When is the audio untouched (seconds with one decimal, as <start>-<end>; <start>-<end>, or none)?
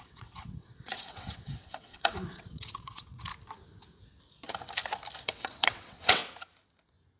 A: 3.3-5.2; 6.2-7.2